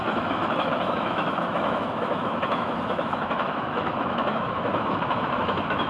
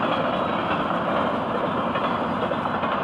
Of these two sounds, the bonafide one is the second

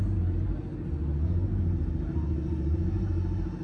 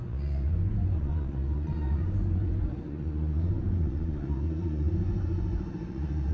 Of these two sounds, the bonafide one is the first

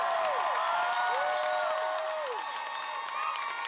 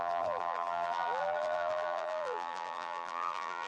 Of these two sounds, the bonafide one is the first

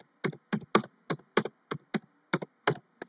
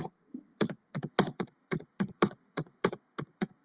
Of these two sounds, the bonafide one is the first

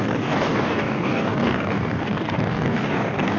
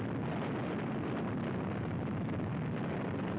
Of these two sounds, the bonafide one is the second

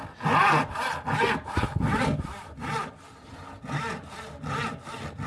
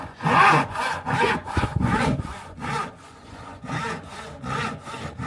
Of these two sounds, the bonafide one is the first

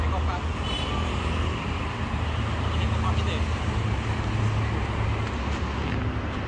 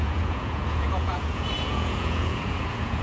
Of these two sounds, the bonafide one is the first